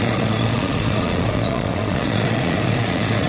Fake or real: fake